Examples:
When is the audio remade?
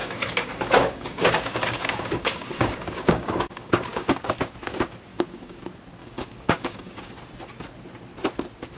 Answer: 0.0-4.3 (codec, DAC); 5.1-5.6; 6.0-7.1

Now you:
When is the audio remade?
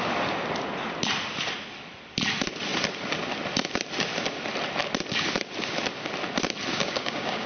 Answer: 6.7-7.5 (codec, DAC)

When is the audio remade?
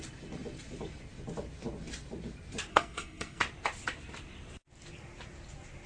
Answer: 2.7-3.4 (codec, SNAC)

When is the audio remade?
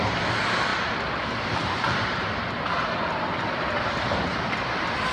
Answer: 0.7-3.8 (vocoder, BigVGAN v2)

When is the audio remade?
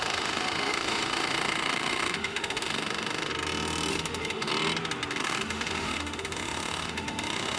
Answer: 0.0-3.3 (autoencoder, DAC-VAE); 3.9-4.5; 5.1-7.6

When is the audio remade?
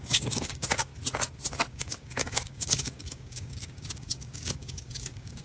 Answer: 0.0-0.9 (codec, DAC); 1.7-5.4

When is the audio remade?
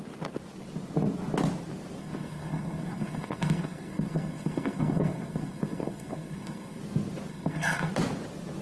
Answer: 2.0-6.8 (codec, SNAC); 7.3-7.9